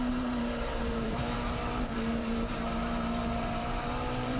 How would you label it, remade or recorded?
remade